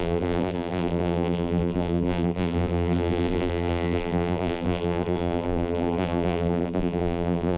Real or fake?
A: fake